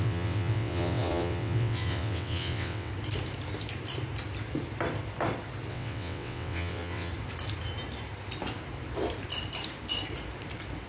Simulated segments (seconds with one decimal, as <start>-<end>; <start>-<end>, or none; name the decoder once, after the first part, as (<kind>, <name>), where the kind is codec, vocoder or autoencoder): 0.0-2.9 (vocoder, WaveNeXt); 5.7-7.1